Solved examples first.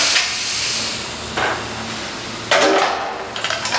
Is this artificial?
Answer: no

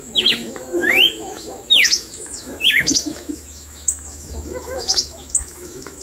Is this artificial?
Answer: yes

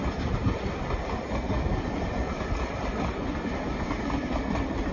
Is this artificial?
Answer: no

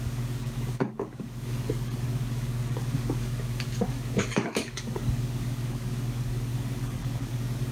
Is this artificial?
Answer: yes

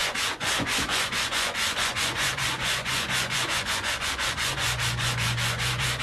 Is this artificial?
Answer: yes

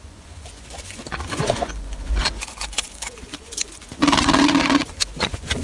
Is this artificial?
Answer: yes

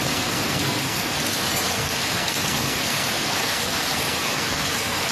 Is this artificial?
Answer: yes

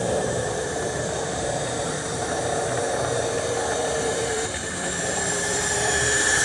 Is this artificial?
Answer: yes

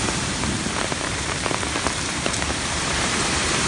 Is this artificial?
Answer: yes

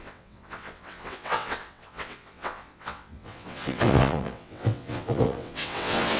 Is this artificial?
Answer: yes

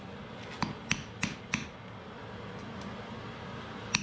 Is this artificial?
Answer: no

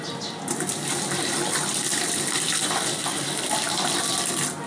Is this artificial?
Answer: yes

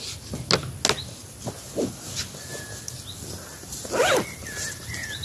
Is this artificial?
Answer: no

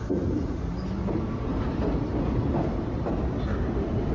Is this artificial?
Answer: no